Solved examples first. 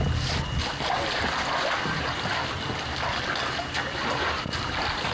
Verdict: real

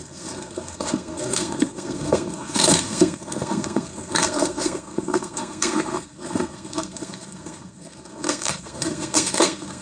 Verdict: fake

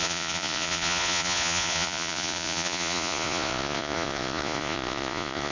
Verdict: fake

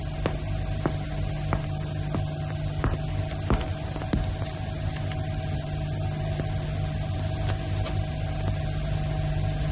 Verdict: real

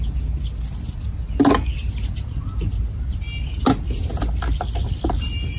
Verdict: real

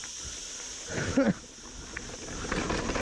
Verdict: real